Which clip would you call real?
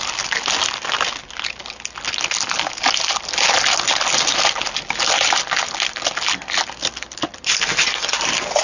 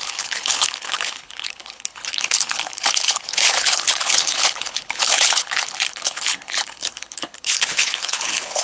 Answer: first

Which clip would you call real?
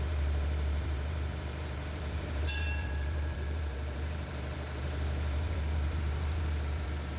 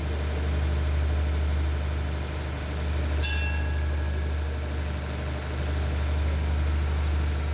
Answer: second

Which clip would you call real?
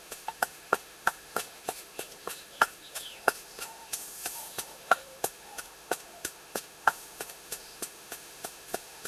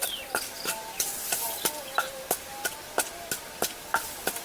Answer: second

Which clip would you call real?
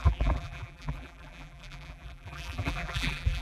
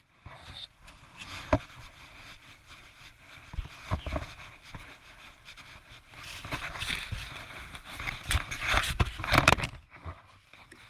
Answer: second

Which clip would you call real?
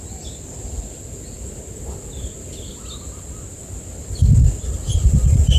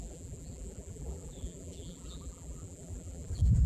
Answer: first